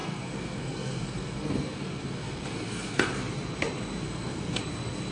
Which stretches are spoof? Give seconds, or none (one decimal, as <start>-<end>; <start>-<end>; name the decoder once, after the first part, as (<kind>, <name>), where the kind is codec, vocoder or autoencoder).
0.0-3.1 (codec, SNAC); 4.0-4.6